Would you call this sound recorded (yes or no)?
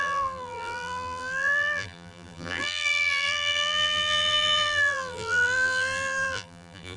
no